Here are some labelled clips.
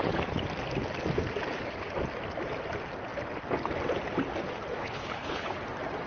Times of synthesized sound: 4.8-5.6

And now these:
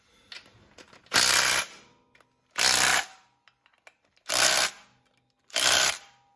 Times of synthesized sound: none

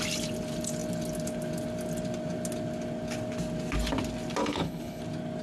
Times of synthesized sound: 4.4-5.0

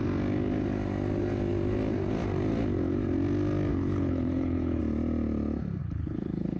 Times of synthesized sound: 3.7-4.8; 5.8-6.6

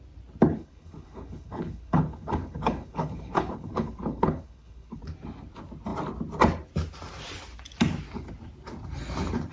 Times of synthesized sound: 0.5-5.0